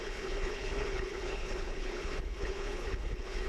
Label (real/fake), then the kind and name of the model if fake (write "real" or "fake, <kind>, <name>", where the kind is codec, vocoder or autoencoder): fake, codec, HILCodec